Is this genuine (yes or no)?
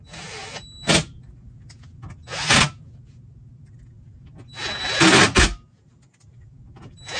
yes